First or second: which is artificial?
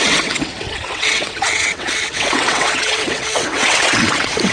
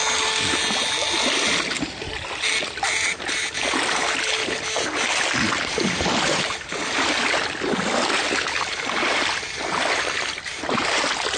first